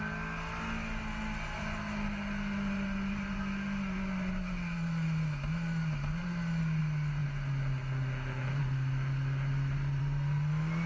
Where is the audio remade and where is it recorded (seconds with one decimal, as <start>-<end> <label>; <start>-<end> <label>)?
0.0-10.9 recorded